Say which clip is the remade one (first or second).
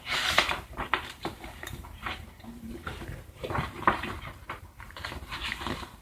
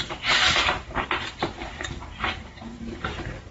first